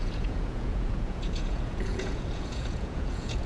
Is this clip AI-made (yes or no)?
yes